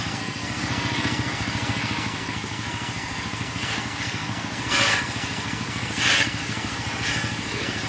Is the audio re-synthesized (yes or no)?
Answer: yes